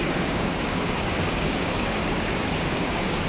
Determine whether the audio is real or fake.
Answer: fake